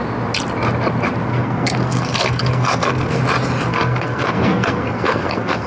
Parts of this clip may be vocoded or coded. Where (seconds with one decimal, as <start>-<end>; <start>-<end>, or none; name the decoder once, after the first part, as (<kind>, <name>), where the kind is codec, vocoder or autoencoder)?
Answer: 1.3-3.2 (codec, SNAC); 3.7-5.7